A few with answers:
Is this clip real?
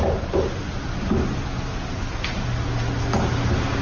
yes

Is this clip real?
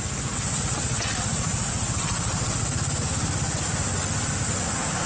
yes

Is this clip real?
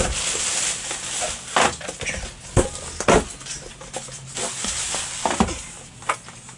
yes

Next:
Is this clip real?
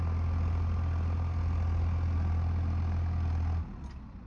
yes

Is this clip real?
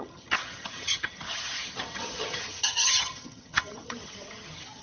no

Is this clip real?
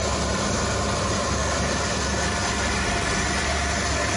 yes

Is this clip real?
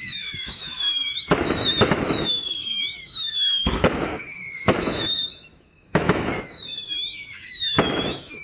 no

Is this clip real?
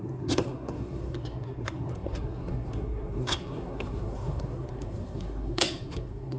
no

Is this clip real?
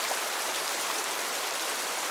no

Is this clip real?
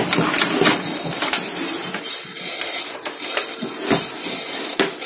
yes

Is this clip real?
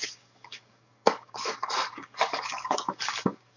no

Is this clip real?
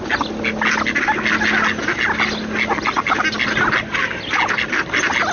yes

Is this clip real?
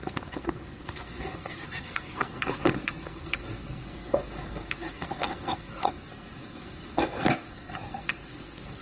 no